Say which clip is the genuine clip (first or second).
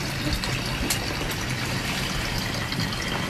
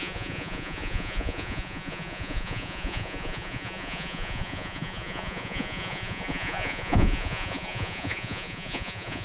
first